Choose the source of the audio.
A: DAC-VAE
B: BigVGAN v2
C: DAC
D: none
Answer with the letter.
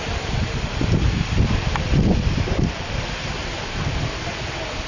D